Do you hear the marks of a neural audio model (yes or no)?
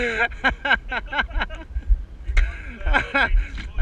no